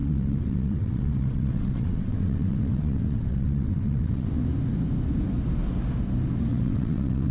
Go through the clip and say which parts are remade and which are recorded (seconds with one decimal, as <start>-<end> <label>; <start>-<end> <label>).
0.0-4.4 remade; 4.4-6.5 recorded; 6.5-7.3 remade